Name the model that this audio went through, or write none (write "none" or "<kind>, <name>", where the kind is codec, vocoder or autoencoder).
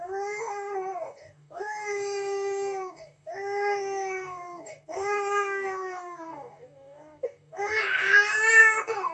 codec, DAC